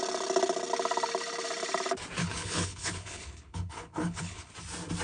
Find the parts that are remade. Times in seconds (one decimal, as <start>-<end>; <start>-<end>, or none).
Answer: 2.2-4.5